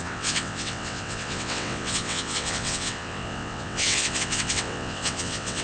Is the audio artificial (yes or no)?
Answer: yes